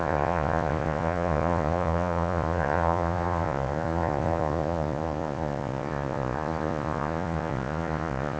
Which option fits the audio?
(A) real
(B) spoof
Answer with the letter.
B